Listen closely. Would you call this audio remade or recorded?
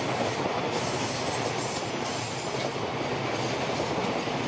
recorded